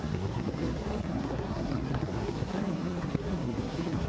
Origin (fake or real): fake